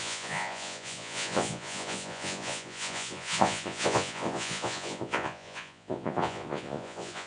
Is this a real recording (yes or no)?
no